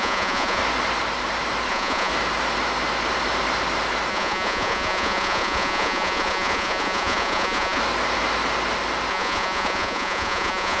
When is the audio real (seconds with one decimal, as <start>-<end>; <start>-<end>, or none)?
0.6-1.7; 2.1-4.1; 7.8-9.1